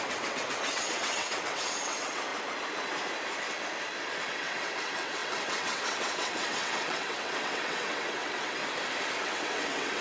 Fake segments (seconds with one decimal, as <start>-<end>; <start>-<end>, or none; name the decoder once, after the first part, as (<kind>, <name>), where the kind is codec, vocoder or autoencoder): 0.0-2.3 (vocoder, WaveNeXt); 4.3-8.6; 9.2-10.0